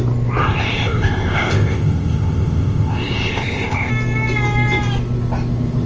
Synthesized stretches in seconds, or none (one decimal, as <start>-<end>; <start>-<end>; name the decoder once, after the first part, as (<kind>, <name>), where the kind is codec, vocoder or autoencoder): 0.4-3.9 (codec, ZipCodec)